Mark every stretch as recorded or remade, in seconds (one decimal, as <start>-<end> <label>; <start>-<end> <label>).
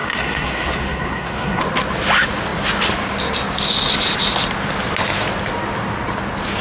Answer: 0.0-1.6 remade; 1.6-6.6 recorded